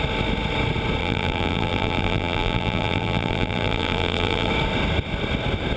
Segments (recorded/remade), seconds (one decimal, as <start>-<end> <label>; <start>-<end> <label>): 0.0-1.0 recorded; 1.0-4.5 remade; 4.5-5.8 recorded